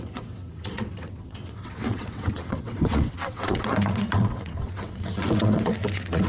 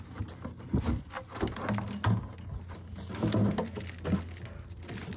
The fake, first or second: first